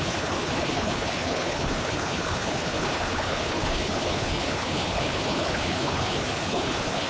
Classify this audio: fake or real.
fake